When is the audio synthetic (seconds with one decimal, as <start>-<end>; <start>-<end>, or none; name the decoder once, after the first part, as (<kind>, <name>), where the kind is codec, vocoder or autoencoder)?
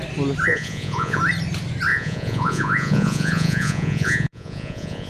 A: 0.5-1.2 (vocoder, Vocos); 1.9-5.1